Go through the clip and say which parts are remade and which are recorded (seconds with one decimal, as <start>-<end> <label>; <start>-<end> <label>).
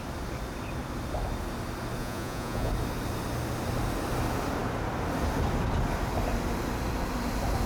0.0-2.0 recorded; 2.0-2.7 remade; 2.7-7.7 recorded